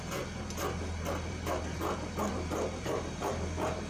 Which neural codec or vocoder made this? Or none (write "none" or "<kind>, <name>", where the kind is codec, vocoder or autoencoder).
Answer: vocoder, BigVGAN v2